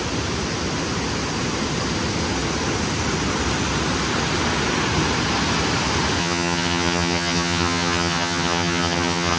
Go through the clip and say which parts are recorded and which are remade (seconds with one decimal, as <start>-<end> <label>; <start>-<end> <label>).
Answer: 0.0-6.2 recorded; 6.2-9.4 remade